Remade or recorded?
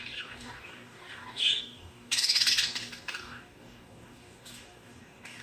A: remade